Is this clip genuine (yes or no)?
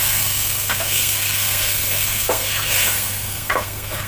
no